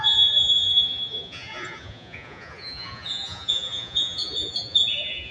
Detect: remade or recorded remade